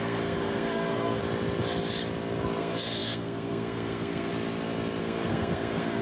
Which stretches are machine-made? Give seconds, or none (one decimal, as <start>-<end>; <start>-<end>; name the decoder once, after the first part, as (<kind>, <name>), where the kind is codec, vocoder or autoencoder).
0.0-1.2 (codec, SNAC); 2.6-4.3; 5.0-6.0

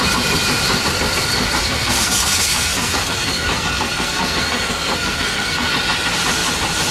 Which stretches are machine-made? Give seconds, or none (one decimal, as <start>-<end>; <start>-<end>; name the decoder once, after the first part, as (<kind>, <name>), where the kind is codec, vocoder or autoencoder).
1.6-5.7 (codec, SNAC)

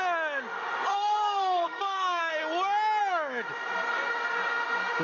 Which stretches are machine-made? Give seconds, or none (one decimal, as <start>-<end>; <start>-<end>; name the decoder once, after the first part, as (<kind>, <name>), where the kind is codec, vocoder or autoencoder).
0.9-2.3 (codec, SNAC)

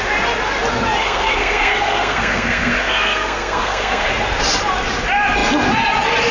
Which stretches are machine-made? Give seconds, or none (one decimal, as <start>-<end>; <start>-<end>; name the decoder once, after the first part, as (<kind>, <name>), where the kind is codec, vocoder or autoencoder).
1.0-4.1 (codec, SNAC)

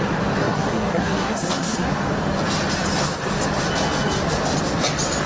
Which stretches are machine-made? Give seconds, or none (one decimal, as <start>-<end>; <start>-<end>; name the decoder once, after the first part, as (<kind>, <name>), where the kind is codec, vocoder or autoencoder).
0.4-1.9 (codec, SNAC)

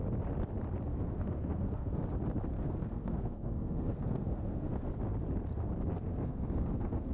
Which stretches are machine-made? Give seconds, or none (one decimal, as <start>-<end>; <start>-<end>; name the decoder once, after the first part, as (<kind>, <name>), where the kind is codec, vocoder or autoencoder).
0.9-2.0 (codec, SNAC); 2.5-4.9; 5.9-7.1

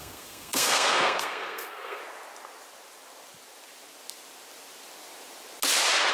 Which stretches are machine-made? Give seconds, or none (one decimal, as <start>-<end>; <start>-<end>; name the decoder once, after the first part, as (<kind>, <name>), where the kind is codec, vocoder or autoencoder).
0.0-2.0 (codec, SNAC)